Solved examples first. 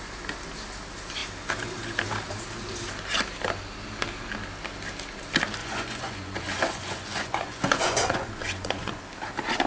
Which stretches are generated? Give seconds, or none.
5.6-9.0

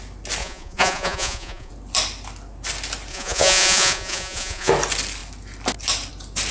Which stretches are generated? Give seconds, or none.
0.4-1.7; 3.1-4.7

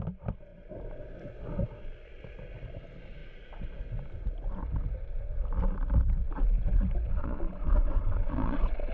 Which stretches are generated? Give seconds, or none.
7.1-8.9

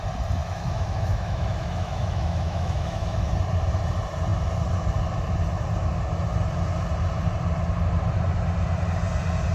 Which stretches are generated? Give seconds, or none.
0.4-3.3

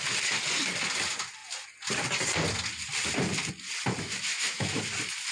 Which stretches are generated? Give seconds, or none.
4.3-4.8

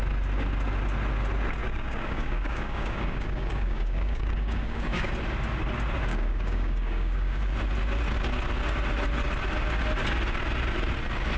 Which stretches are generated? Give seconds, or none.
1.6-5.1; 6.1-7.4

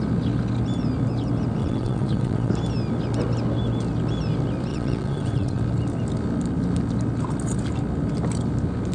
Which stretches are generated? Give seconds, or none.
1.6-2.5; 4.7-5.6

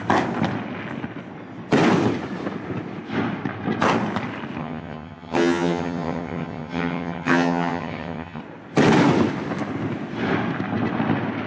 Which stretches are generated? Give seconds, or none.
4.6-8.4